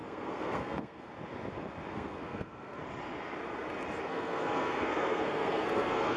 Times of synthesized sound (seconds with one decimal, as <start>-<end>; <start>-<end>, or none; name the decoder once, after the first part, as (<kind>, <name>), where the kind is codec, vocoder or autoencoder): 0.0-1.1 (codec, SNAC); 1.9-2.8; 4.0-6.2